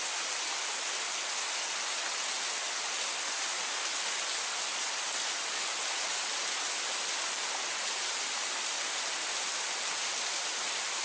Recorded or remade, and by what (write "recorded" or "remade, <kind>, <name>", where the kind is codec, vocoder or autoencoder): recorded